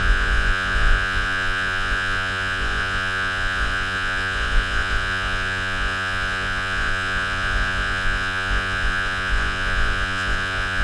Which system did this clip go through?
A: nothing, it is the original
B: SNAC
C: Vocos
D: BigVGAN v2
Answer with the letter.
C